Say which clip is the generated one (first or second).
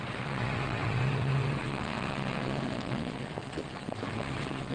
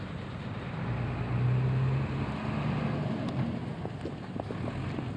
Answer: first